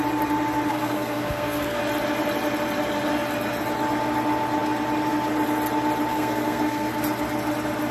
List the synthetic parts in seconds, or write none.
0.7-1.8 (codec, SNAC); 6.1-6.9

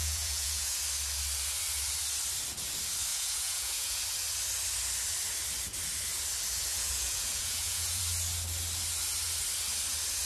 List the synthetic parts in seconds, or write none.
0.0-0.8 (vocoder, Vocos); 3.1-4.0; 6.7-8.0